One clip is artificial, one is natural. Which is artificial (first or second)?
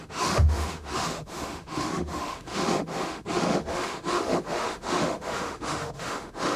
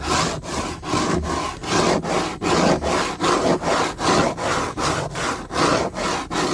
first